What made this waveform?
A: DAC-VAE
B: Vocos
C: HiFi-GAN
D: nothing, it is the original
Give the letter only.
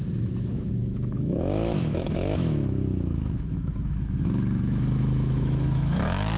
A